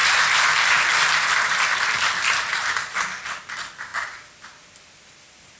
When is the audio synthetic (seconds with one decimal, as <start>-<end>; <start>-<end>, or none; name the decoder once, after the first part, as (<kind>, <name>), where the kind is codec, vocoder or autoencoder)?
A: 0.0-3.4 (vocoder, BigVGAN v2)